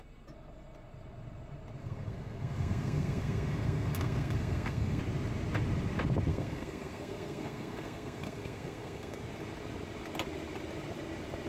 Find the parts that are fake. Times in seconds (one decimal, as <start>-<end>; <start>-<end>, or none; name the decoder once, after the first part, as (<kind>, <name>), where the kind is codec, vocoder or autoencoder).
1.8-5.0 (codec, SNAC); 6.3-9.2